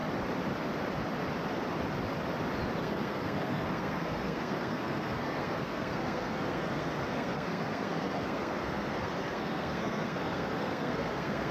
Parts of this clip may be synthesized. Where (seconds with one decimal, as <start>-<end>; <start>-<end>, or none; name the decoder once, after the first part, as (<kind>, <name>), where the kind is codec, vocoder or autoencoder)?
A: 2.8-11.5 (codec, SNAC)